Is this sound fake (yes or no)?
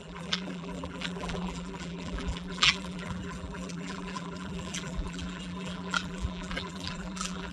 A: yes